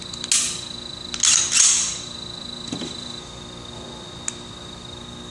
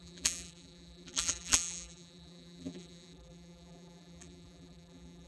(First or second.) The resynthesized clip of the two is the second